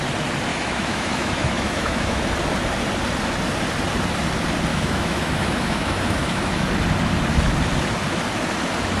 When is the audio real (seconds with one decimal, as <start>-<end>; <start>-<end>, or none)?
0.0-0.5; 2.2-4.7; 6.7-9.0